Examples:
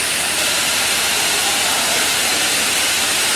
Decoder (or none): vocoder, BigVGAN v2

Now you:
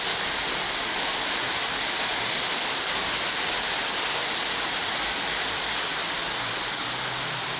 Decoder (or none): vocoder, BigVGAN v2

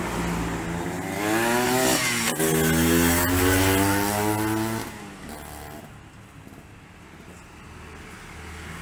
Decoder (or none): none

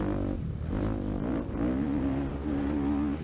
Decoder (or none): none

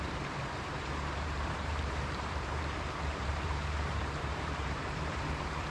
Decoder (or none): vocoder, BigVGAN v2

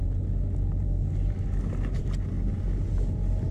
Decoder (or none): none